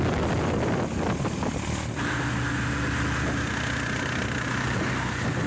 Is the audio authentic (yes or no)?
yes